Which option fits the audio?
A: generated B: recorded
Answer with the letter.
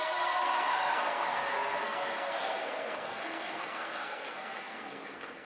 A